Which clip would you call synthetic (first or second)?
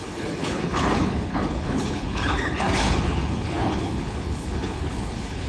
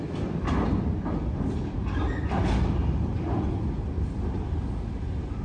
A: first